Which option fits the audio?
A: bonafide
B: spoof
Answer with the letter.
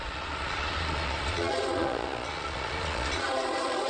B